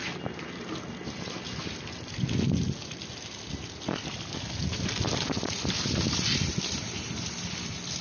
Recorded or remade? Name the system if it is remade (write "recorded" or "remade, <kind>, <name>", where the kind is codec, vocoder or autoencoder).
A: recorded